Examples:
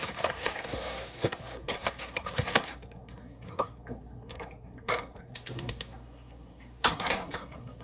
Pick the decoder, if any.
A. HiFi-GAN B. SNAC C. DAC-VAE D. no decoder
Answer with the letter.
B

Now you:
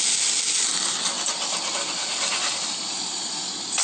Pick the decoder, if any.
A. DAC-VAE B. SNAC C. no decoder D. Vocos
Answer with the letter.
C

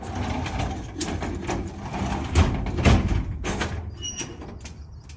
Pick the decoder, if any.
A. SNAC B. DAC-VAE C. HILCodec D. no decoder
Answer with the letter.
D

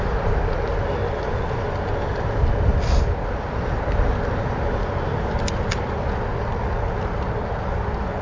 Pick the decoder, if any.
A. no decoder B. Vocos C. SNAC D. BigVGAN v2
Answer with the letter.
A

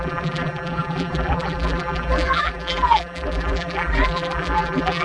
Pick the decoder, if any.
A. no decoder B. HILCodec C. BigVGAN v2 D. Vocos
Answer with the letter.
C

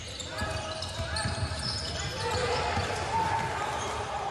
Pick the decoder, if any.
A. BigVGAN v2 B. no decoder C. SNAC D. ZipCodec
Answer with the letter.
B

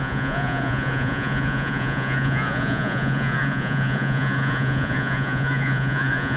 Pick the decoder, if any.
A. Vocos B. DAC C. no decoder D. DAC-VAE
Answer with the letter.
A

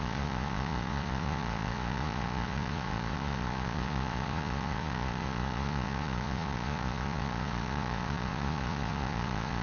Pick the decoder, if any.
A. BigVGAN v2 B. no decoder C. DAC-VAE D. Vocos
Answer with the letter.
D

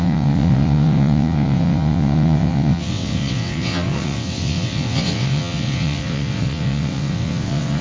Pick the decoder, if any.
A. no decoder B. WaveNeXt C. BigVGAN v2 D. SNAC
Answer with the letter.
B